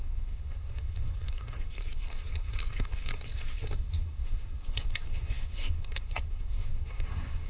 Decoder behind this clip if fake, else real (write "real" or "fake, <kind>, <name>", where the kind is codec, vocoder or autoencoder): fake, codec, SNAC